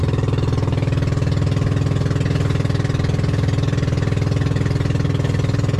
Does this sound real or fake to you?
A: real